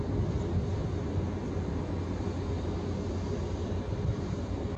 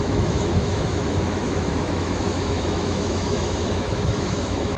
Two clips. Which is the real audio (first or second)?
first